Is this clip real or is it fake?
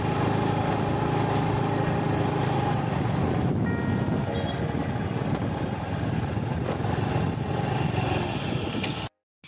real